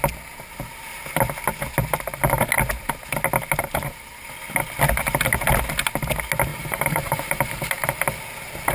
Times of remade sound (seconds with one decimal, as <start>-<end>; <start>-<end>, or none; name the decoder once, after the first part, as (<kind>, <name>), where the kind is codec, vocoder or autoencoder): 6.5-8.2 (vocoder, BigVGAN v2)